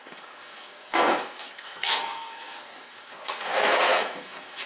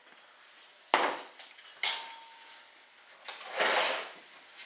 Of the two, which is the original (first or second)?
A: second